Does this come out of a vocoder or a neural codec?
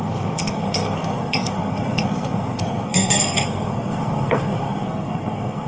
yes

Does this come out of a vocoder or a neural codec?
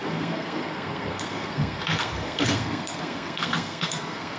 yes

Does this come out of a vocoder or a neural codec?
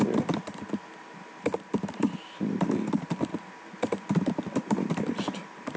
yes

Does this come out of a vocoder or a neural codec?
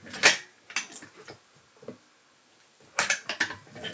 no